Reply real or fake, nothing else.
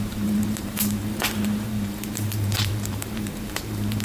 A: fake